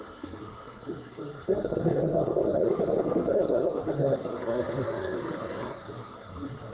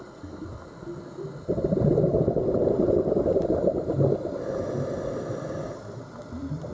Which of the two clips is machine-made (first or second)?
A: first